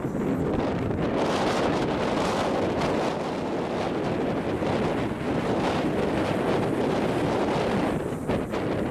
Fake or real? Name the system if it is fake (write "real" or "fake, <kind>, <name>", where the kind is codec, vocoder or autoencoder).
real